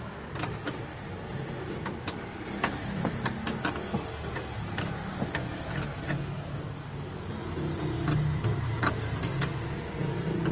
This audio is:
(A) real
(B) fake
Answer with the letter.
A